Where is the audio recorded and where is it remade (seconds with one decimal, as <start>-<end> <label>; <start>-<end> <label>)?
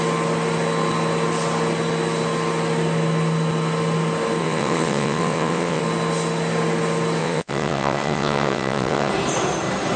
0.0-4.4 recorded; 4.4-5.8 remade; 5.8-7.2 recorded; 7.2-9.1 remade; 9.1-10.0 recorded